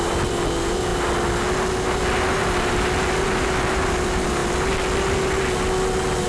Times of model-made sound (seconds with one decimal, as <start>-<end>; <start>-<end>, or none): none